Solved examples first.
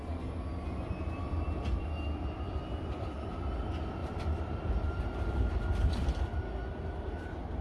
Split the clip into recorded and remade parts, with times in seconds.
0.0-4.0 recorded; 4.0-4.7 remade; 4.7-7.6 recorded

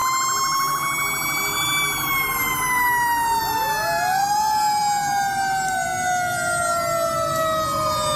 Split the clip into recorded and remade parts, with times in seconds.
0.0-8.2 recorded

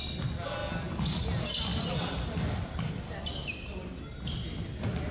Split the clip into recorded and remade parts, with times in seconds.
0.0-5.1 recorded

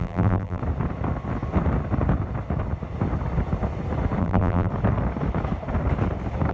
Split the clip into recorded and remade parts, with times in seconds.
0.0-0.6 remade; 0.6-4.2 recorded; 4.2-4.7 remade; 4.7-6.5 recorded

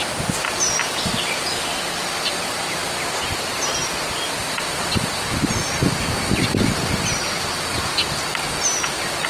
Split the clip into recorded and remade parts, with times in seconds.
0.0-9.3 recorded

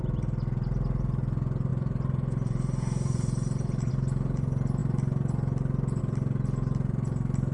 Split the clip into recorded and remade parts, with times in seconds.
0.0-1.7 recorded; 1.7-3.9 remade; 3.9-7.5 recorded

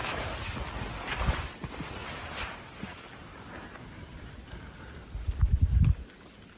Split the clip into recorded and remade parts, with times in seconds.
0.0-2.0 recorded; 2.0-5.8 remade; 5.8-6.6 recorded